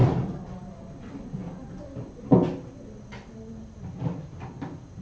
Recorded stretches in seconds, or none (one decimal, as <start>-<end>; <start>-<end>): 0.7-5.0